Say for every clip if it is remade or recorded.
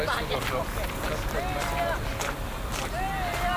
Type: recorded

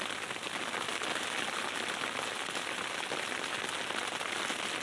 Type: recorded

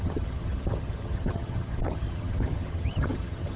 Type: remade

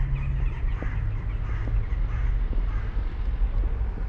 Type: recorded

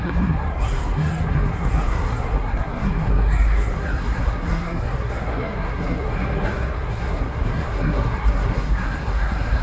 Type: remade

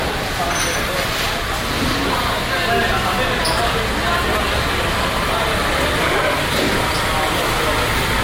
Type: recorded